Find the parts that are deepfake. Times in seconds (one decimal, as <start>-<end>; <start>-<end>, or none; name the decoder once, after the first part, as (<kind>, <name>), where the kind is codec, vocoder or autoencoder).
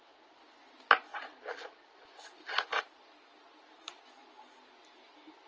none